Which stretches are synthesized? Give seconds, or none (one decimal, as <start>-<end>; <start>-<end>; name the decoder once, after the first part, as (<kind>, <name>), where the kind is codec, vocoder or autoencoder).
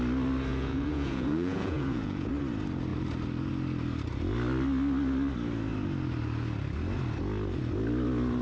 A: 0.5-2.3 (vocoder, Vocos)